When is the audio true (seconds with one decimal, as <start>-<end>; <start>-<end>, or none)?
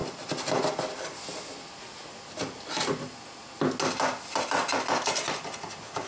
0.0-6.1